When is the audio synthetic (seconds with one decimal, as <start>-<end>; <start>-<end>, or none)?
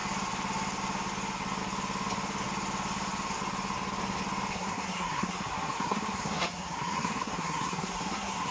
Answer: 4.5-8.5